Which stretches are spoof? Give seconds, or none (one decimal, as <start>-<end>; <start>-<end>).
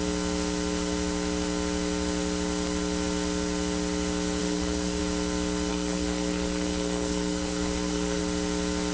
4.4-5.0; 5.7-8.2